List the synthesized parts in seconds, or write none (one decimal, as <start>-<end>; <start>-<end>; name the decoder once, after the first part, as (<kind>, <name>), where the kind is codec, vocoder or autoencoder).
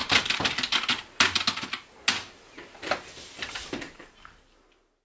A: none